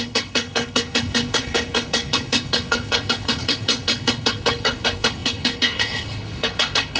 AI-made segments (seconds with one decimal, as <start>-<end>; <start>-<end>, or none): 0.0-7.0